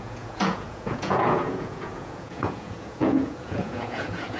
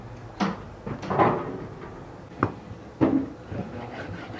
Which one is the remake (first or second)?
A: first